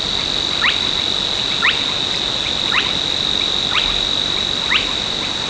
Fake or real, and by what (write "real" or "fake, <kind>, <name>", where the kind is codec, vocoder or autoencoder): real